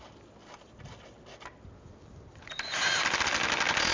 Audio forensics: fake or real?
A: real